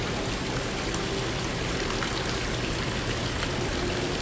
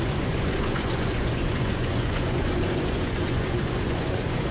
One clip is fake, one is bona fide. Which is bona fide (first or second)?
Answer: first